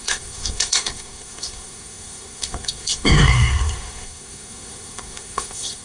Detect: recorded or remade remade